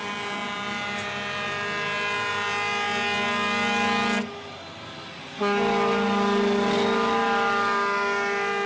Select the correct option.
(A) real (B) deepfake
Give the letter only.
A